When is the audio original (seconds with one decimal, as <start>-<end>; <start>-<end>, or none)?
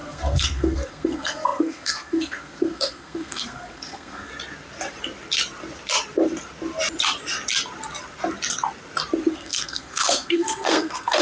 4.3-9.3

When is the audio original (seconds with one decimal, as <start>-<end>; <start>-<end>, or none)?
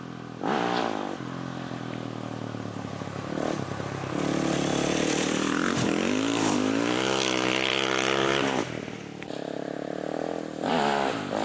0.0-11.4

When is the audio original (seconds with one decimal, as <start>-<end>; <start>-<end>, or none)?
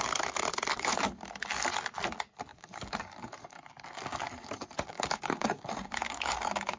0.0-0.7; 1.2-2.5